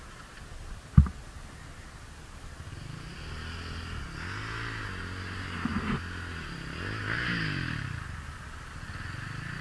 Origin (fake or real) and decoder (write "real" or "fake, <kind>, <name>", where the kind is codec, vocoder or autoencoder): real